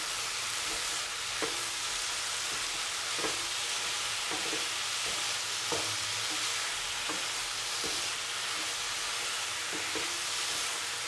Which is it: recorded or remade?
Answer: recorded